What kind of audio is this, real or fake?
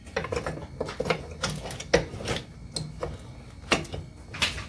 real